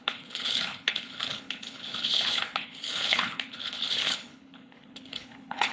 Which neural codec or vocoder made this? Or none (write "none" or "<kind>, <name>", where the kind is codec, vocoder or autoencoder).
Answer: codec, HILCodec